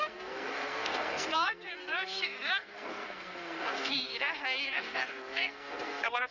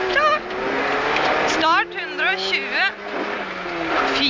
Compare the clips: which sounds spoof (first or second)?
first